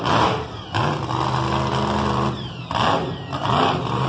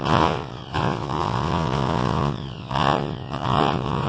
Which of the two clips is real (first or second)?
first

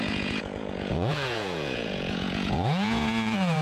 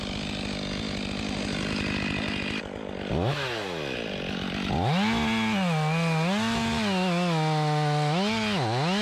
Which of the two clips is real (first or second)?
second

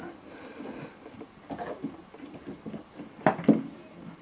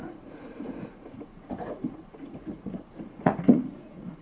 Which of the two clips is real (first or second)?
first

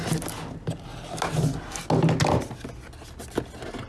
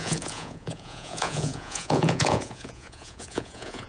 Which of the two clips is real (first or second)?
first